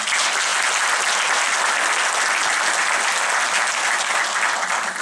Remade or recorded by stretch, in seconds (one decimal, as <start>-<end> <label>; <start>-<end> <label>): 0.0-5.0 recorded